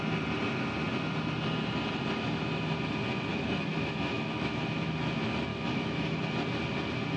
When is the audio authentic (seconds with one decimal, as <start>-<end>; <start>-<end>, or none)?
0.0-3.3; 4.6-5.5; 6.2-7.2